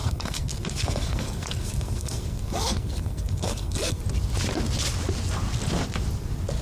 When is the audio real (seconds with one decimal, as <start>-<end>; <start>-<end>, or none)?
4.0-6.6